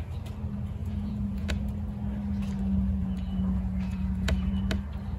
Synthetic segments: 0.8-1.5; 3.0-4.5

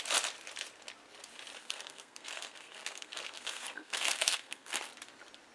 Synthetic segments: 1.6-4.9

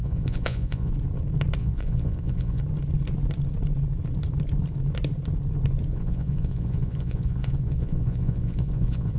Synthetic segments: 0.0-0.9; 1.6-2.6; 5.9-9.2

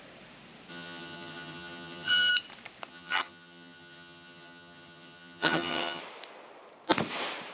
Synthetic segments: 0.7-2.3; 2.9-6.0

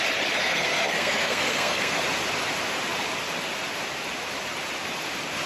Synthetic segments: 0.4-2.0

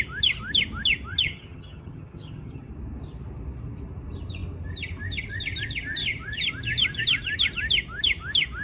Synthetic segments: 1.1-2.7

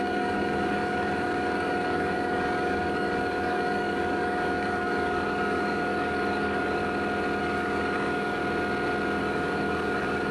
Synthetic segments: 0.0-6.8; 7.4-8.4; 9.2-10.3